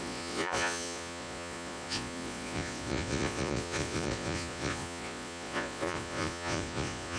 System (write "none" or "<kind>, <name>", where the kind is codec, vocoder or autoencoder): vocoder, Vocos